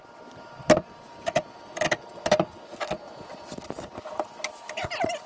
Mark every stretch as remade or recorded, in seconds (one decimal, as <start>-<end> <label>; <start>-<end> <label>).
0.0-5.3 recorded